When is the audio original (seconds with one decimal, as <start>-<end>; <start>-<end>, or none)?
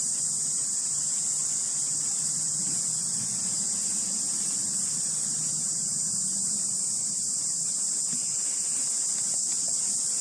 0.0-5.5; 8.0-10.2